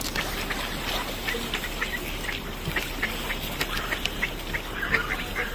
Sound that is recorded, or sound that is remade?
recorded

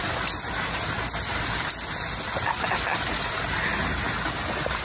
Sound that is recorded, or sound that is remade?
recorded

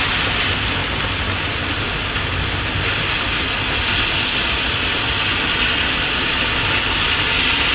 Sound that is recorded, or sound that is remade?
recorded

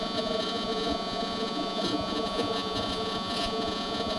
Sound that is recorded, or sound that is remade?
remade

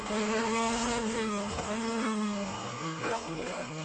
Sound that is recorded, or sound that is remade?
remade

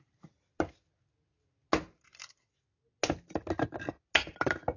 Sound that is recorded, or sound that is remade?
recorded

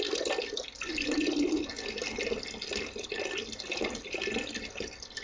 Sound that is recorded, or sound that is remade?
recorded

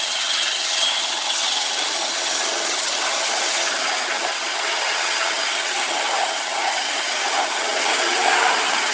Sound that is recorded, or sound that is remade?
remade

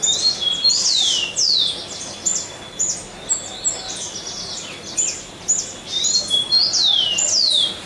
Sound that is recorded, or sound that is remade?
recorded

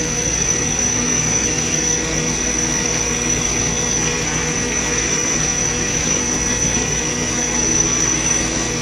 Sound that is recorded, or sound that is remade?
remade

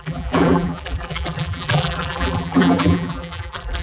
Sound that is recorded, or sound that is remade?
remade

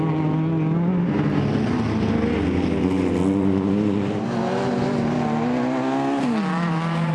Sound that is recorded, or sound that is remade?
recorded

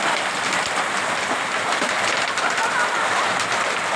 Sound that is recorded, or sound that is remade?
recorded